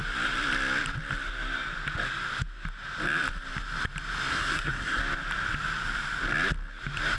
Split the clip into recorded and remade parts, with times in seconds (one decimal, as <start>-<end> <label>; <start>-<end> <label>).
0.0-4.3 recorded; 4.3-5.0 remade; 5.0-7.2 recorded